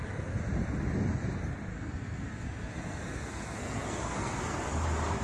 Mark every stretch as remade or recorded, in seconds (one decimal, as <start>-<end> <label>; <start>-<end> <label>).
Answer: 0.0-1.7 recorded; 1.7-4.7 remade; 4.7-5.2 recorded